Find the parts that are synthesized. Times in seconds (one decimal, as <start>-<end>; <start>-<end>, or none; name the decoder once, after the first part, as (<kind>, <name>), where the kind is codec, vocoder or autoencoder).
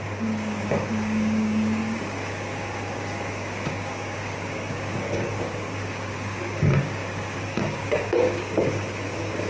0.0-9.5 (codec, DAC)